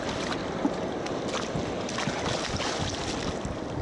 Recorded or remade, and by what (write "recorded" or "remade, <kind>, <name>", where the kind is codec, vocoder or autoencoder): recorded